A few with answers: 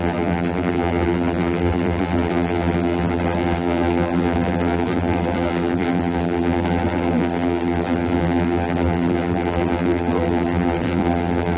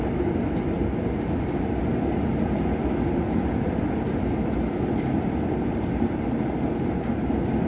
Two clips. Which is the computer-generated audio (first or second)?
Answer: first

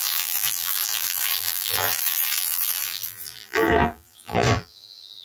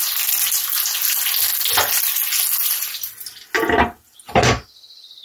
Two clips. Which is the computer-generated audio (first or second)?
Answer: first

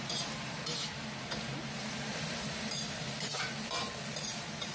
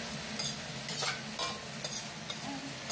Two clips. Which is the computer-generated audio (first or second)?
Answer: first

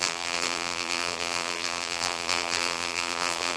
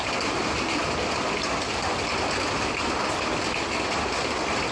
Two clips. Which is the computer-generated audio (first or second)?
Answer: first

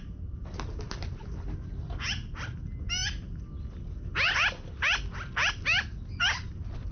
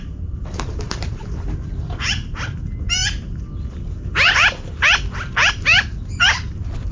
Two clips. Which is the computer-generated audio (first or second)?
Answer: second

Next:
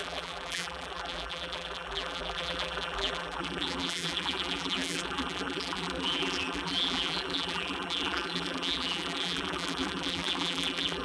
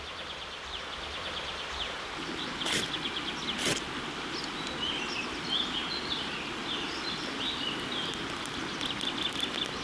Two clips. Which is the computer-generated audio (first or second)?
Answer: first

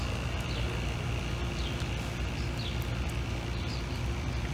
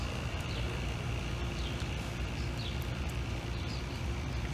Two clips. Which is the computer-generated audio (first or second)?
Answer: second